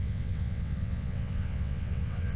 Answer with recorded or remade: remade